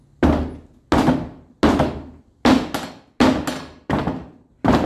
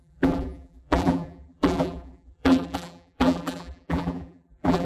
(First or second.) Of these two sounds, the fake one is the second